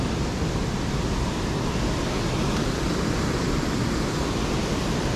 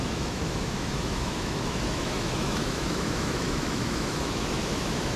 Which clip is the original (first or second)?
first